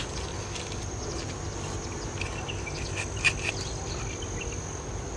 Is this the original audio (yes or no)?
yes